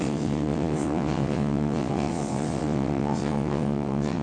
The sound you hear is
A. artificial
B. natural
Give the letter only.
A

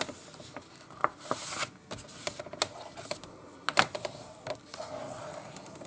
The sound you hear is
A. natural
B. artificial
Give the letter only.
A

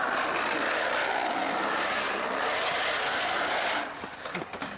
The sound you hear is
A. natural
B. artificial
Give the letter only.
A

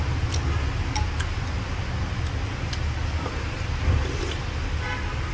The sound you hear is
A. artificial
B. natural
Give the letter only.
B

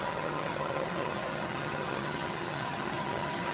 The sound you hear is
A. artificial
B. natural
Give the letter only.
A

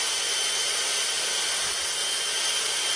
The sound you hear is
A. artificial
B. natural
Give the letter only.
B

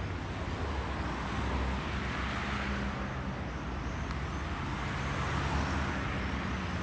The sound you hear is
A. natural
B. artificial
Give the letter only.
A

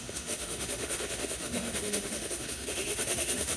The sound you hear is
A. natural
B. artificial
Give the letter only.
B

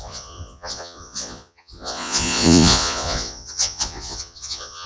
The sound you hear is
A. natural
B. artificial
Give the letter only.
B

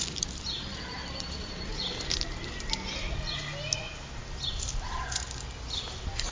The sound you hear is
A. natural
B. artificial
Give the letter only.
A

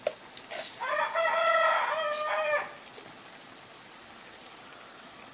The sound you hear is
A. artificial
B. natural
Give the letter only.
B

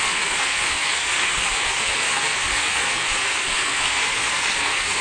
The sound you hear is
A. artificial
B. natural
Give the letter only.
A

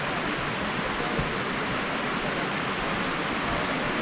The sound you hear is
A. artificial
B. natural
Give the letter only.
B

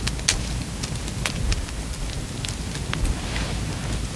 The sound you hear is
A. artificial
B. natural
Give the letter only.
B